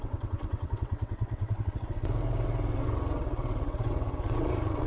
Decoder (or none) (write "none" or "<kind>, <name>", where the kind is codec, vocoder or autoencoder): vocoder, WaveNeXt